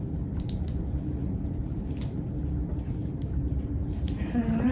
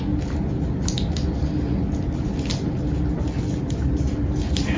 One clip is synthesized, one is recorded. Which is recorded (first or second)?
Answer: second